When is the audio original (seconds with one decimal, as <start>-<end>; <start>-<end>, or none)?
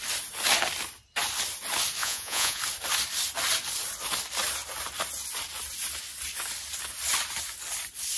0.0-2.0; 2.6-8.2